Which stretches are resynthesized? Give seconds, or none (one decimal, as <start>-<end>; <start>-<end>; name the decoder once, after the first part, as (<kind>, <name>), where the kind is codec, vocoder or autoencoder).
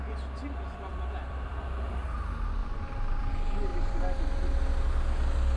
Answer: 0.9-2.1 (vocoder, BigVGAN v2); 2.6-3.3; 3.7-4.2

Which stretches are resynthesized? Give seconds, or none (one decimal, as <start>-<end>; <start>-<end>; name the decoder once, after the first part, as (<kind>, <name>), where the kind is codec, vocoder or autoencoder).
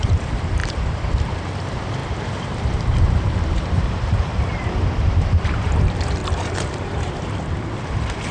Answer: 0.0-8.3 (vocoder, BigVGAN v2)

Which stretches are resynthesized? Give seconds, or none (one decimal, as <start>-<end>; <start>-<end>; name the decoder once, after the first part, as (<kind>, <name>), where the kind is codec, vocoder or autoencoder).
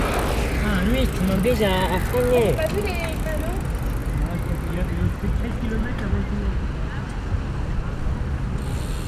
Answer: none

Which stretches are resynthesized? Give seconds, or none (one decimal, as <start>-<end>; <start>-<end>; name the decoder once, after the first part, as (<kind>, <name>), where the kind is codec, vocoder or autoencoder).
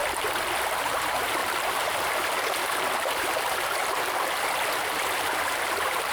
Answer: 0.8-3.8 (vocoder, BigVGAN v2); 5.0-6.1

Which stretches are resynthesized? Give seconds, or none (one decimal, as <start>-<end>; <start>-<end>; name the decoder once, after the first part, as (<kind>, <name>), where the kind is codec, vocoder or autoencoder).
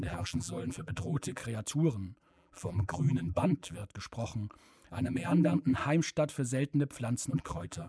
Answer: 0.0-1.4 (vocoder, BigVGAN v2); 2.3-3.8; 4.9-5.8; 7.3-7.9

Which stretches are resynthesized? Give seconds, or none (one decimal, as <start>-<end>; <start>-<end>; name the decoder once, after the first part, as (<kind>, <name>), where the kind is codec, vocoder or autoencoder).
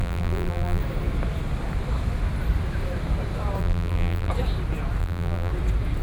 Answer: 0.0-0.8 (vocoder, BigVGAN v2); 3.6-4.3; 5.0-5.5